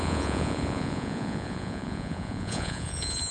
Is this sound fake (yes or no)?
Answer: yes